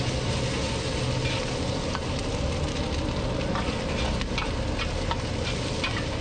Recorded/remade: recorded